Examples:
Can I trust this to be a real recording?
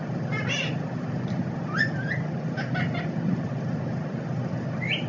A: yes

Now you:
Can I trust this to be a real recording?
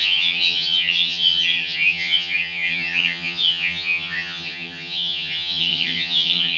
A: no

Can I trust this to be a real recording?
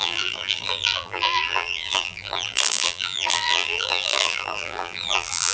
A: no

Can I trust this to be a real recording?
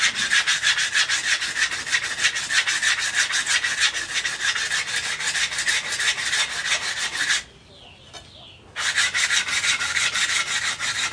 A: yes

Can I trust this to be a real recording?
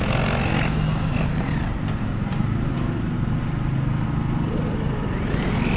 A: yes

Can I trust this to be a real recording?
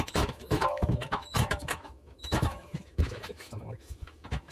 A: no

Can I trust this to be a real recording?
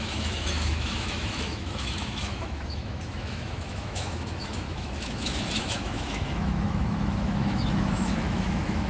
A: no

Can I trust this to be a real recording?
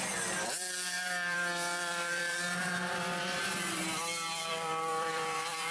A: no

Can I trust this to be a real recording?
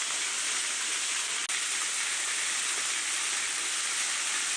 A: yes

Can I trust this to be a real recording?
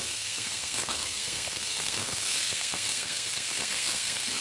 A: no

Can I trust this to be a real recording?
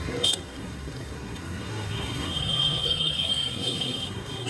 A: no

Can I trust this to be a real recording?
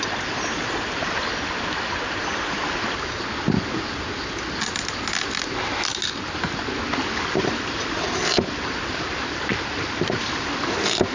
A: yes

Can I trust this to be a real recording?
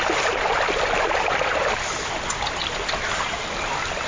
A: yes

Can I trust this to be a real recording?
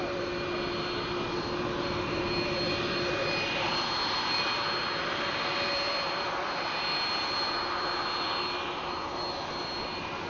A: yes